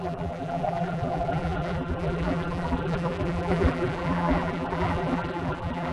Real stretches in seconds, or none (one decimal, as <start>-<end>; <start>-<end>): none